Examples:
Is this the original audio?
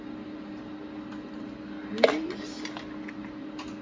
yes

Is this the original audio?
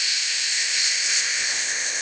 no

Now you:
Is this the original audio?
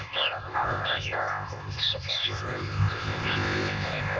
no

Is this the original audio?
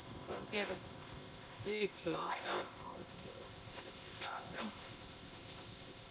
no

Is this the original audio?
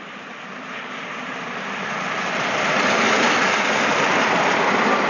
yes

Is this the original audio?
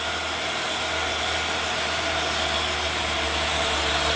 yes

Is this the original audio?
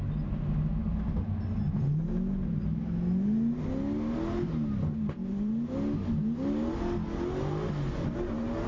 yes